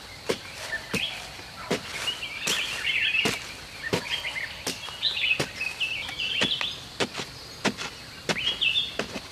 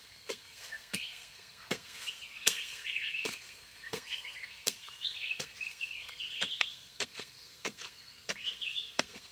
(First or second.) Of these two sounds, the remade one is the second